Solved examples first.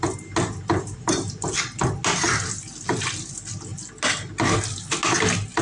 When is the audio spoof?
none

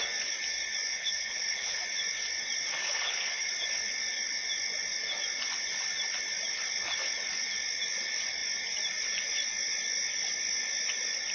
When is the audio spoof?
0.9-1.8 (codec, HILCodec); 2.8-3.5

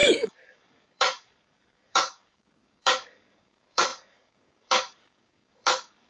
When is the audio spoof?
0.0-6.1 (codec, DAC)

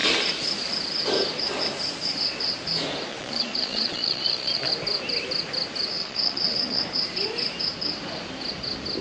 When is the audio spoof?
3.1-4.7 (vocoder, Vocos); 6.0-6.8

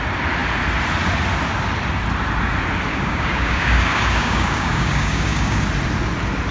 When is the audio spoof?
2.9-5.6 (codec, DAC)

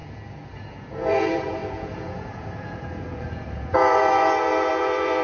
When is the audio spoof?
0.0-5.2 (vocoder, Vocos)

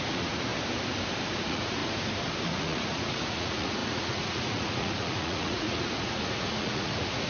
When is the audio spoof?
0.0-0.5 (vocoder, Vocos); 1.4-1.8; 2.5-7.3